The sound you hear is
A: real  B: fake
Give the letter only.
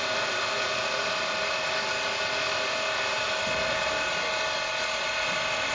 A